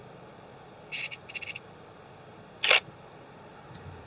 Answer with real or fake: real